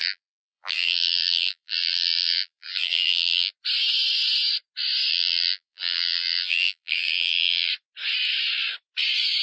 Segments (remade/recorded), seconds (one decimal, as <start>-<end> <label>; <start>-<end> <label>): 0.0-3.5 remade; 3.5-5.1 recorded; 5.1-7.7 remade; 7.7-9.4 recorded